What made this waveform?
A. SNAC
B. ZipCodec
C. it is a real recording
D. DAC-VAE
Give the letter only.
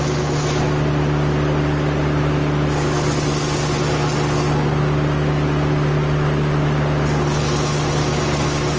C